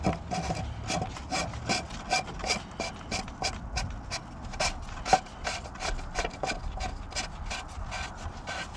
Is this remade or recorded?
recorded